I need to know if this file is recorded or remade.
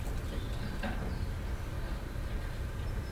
recorded